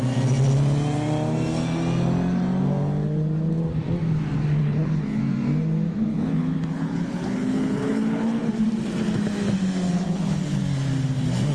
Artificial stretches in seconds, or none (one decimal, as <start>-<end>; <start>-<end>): 4.6-5.2; 6.1-8.5; 9.9-10.6